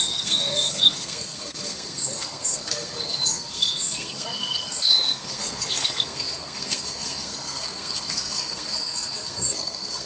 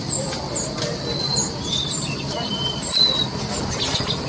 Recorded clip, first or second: second